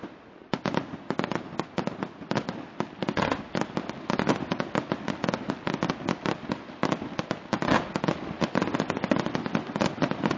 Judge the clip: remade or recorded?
recorded